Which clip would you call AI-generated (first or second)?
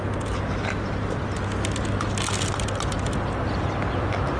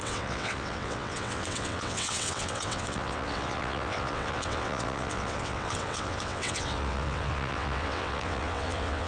second